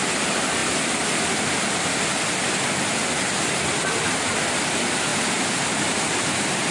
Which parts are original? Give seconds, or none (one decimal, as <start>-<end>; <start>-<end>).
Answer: 0.0-6.7